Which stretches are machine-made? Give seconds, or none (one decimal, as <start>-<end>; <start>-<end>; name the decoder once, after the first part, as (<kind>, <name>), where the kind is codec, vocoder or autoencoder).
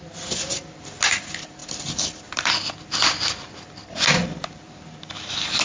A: 1.6-2.8 (vocoder, BigVGAN v2)